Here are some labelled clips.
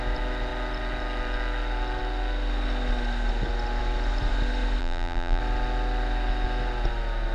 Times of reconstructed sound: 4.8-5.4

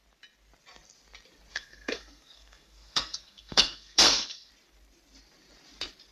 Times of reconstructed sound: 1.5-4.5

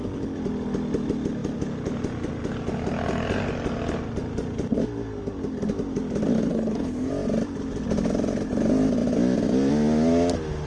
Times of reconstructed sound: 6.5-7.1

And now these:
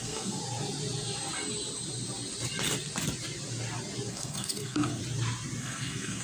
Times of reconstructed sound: 0.0-0.4; 4.1-5.0; 5.6-6.2